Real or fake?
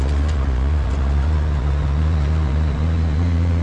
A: fake